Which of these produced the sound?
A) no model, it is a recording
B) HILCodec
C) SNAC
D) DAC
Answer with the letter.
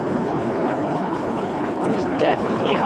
B